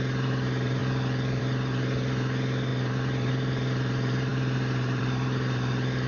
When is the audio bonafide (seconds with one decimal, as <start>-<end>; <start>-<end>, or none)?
0.8-1.4